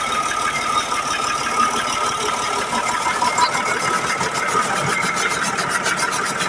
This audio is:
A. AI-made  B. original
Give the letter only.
B